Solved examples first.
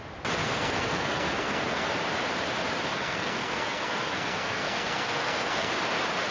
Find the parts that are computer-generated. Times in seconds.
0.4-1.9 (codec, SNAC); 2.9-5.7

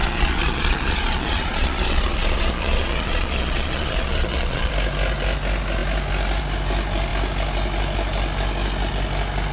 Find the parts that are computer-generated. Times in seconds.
0.0-4.7 (vocoder, Vocos)

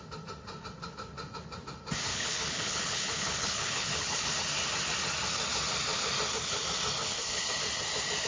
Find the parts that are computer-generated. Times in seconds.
2.1-4.3 (codec, HILCodec); 7.0-7.5

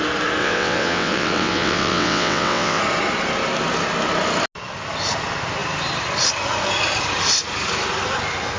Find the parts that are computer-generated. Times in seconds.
0.4-2.8 (vocoder, WaveNeXt)

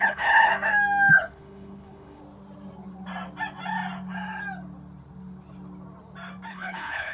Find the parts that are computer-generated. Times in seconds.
0.0-0.5 (codec, HILCodec); 1.1-2.2; 6.5-7.1

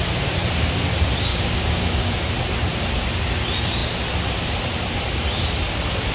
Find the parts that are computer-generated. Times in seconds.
1.3-2.2 (codec, DAC)

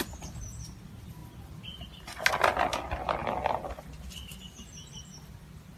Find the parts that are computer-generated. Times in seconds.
none

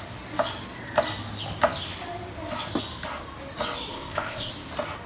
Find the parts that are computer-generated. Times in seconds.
3.9-4.5 (codec, ZipCodec)